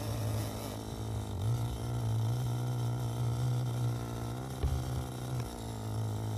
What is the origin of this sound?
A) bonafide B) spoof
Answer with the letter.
A